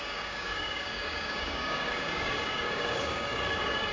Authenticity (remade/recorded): remade